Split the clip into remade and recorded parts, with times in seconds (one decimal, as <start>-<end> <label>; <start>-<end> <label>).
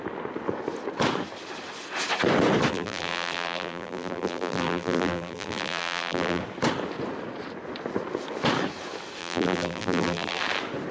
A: 0.0-2.7 recorded; 2.7-6.4 remade; 6.4-9.2 recorded; 9.2-10.4 remade; 10.4-10.9 recorded